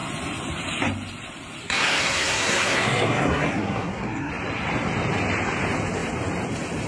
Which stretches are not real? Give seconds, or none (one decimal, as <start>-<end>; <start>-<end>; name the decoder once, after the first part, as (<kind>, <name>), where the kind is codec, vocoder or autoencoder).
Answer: 1.6-4.3 (codec, SNAC)